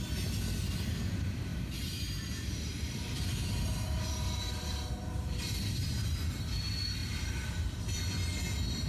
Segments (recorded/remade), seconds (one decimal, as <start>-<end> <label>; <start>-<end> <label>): 0.0-1.5 recorded; 1.5-6.1 remade; 6.1-7.0 recorded; 7.0-8.0 remade; 8.0-8.9 recorded